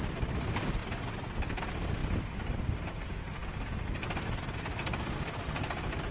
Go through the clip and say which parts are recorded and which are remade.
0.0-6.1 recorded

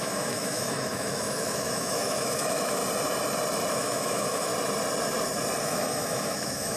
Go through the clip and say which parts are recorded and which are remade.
0.0-2.8 remade; 2.8-3.7 recorded; 3.7-4.5 remade; 4.5-5.6 recorded; 5.6-6.8 remade

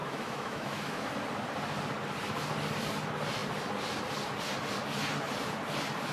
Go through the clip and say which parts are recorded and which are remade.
0.0-1.1 remade; 1.1-6.1 recorded